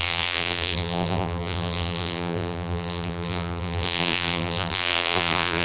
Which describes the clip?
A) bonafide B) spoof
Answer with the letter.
B